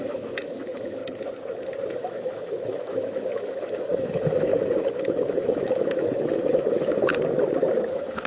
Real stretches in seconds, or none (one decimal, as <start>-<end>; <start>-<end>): 1.0-1.9; 7.1-7.9

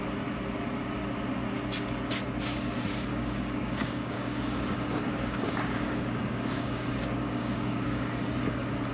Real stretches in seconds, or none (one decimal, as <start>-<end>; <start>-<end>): 0.0-3.1; 8.1-8.9

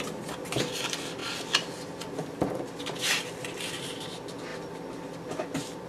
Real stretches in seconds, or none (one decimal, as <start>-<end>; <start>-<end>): 0.0-5.9

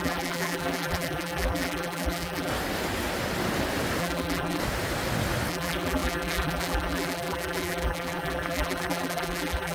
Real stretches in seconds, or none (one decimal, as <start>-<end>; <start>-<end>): 2.5-4.0; 4.6-5.5

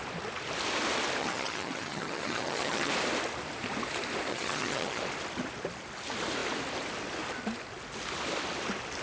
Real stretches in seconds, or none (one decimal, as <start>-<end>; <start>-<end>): 0.0-1.2; 2.9-4.3; 5.0-9.0

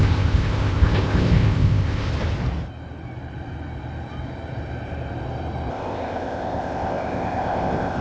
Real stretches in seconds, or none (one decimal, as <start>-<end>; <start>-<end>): 2.1-5.7

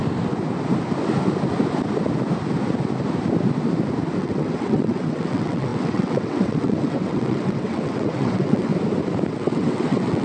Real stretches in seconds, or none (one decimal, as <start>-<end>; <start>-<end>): 0.0-4.2; 8.7-9.3